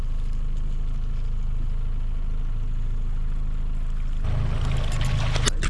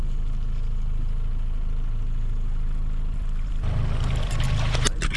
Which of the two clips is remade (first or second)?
second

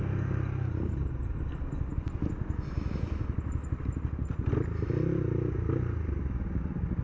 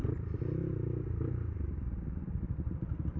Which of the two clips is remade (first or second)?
second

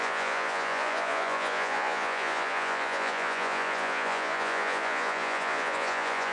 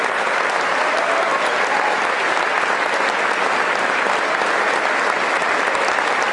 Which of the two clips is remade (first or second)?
first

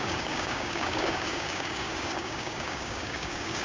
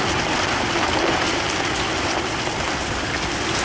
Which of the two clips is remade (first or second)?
first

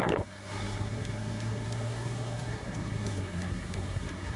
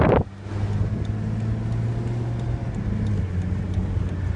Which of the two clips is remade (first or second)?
first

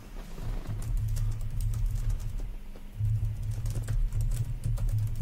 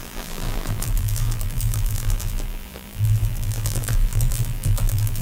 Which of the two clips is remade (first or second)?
second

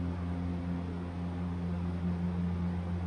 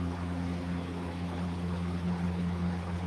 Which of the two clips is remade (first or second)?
second